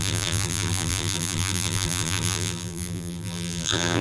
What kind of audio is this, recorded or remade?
remade